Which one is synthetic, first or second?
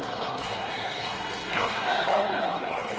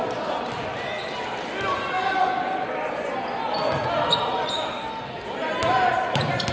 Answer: first